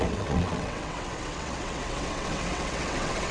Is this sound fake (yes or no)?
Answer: yes